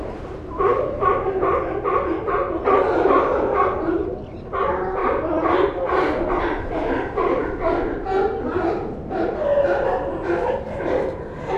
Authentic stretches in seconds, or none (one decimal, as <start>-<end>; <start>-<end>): 0.0-5.0; 6.4-7.4; 7.9-11.6